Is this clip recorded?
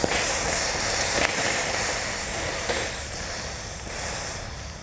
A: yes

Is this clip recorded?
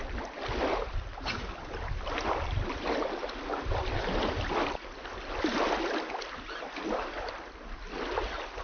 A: yes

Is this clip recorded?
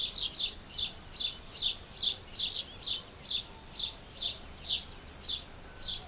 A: yes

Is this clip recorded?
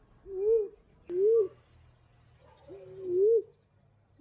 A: yes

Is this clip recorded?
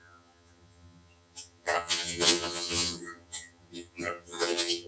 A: no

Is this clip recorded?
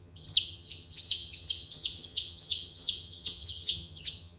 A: no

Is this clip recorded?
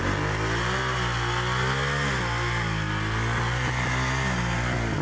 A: yes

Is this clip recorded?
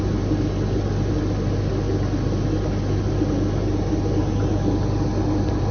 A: yes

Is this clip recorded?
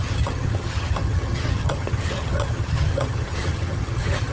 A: no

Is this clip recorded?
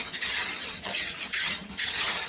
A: no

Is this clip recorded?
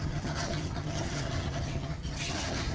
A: no